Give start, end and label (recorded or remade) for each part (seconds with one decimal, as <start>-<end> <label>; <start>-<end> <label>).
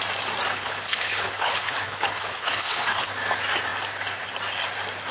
0.0-0.5 recorded; 0.5-3.1 remade; 3.1-5.1 recorded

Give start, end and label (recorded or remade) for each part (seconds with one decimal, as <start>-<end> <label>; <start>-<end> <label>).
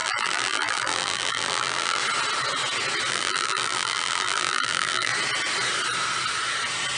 0.0-2.0 remade; 2.0-3.1 recorded; 3.1-5.1 remade; 5.1-7.0 recorded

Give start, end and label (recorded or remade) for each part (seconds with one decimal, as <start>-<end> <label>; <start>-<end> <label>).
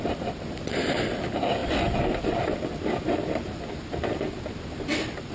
0.0-5.3 recorded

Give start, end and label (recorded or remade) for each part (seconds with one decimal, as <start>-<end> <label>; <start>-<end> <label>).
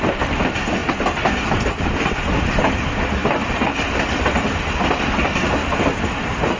0.0-0.8 remade; 0.8-1.7 recorded; 1.7-3.2 remade; 3.2-5.0 recorded; 5.0-5.6 remade; 5.6-6.6 recorded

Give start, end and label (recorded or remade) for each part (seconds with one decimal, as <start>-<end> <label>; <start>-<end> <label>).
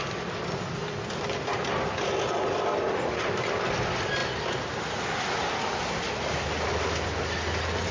0.0-7.9 recorded